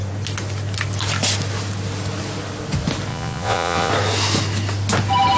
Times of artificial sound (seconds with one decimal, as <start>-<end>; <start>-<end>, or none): 3.1-3.9